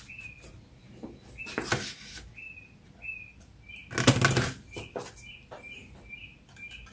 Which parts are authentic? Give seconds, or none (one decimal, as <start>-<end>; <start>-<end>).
0.0-6.9